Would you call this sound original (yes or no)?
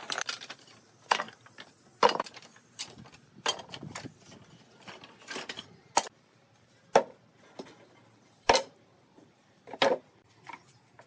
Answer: yes